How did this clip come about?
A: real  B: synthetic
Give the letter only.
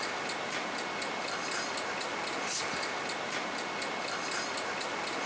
A